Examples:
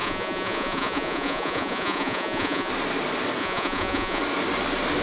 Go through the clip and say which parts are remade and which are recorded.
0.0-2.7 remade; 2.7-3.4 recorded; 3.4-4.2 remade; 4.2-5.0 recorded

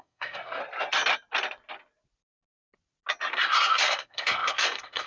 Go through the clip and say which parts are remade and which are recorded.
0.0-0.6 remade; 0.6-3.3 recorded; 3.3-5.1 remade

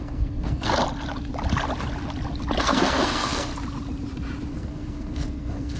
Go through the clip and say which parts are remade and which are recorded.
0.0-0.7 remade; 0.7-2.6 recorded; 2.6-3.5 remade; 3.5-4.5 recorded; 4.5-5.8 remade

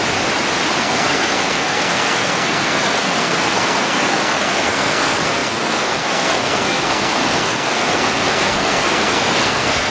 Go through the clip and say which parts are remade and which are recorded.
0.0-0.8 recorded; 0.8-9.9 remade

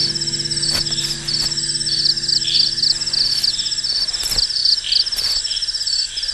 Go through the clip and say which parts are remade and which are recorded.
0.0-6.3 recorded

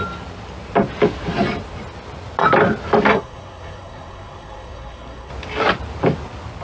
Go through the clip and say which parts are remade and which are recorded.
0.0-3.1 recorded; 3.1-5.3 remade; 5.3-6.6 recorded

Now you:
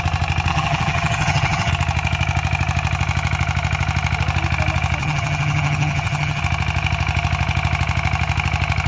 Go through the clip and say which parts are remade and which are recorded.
0.0-0.5 recorded; 0.5-1.7 remade; 1.7-5.0 recorded; 5.0-6.4 remade; 6.4-8.9 recorded

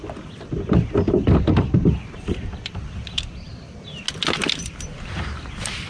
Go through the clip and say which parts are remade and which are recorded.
0.0-5.9 recorded